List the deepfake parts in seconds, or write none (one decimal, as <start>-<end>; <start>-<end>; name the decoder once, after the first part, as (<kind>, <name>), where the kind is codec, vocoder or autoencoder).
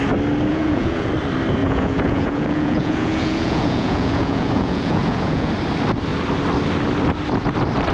0.5-1.1 (vocoder, Vocos); 1.6-5.5